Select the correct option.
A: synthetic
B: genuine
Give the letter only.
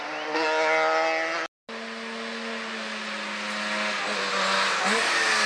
B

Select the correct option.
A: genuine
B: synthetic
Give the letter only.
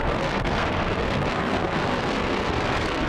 B